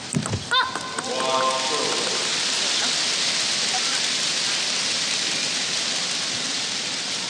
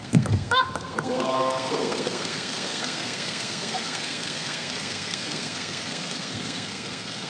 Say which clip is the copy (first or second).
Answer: second